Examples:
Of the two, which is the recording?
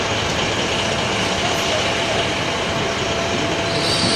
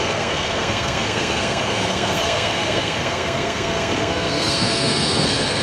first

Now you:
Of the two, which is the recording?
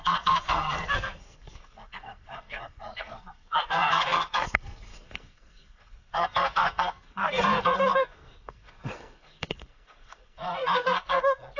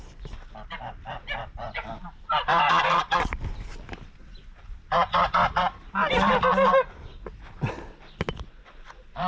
second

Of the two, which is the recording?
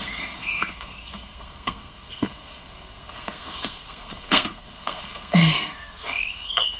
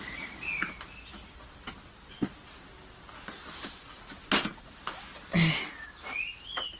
second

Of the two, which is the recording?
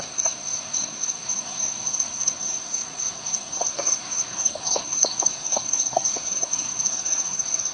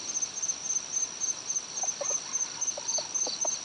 second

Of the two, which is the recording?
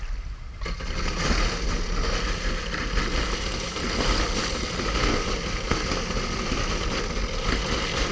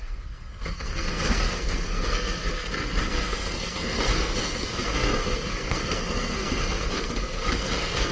first